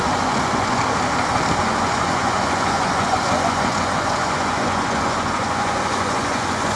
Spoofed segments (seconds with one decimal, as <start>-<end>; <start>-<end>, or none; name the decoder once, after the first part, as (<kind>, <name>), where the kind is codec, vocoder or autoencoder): 0.0-0.8 (vocoder, Vocos); 1.6-6.8